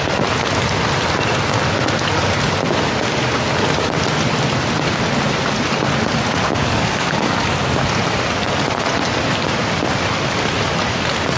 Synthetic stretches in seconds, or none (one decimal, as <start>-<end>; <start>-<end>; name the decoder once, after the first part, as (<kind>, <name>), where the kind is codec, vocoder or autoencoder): 6.5-7.4 (codec, DAC)